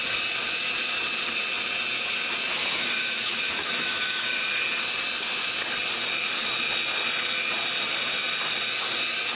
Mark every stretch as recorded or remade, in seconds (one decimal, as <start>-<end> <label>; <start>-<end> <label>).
0.0-2.5 recorded; 2.5-4.4 remade; 4.4-9.4 recorded